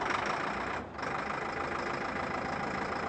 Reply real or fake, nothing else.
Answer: real